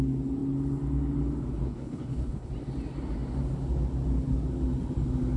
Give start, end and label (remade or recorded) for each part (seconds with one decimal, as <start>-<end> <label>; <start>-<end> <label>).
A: 0.0-1.6 recorded; 1.6-2.5 remade; 2.5-5.4 recorded